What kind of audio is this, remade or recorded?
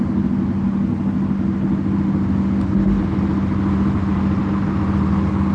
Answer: recorded